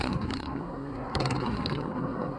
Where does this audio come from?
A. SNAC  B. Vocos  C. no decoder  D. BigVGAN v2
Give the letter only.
A